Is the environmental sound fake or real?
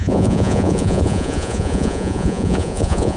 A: fake